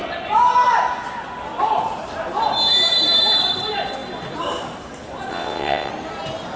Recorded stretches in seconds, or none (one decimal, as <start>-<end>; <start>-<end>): 0.0-5.3; 5.9-6.6